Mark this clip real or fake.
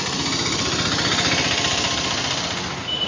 real